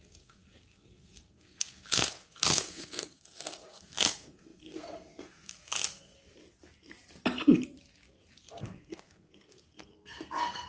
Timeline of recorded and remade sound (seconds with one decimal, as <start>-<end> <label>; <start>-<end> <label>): 0.0-6.1 remade; 6.1-8.6 recorded; 8.6-10.7 remade